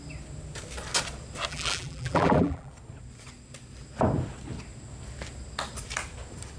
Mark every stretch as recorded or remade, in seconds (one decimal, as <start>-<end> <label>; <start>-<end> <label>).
0.0-1.5 recorded; 1.5-2.7 remade; 2.7-6.6 recorded